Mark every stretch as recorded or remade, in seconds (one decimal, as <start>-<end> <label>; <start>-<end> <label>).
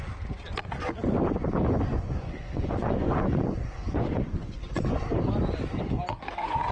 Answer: 0.0-1.9 recorded; 1.9-5.2 remade; 5.2-6.7 recorded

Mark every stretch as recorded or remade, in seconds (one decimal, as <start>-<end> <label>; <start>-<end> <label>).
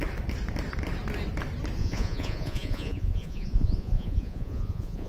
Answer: 0.0-1.8 recorded; 1.8-5.1 remade